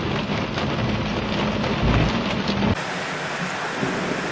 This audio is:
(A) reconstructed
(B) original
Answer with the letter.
B